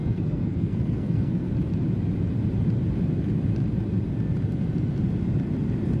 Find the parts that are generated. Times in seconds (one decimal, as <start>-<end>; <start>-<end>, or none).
0.0-1.5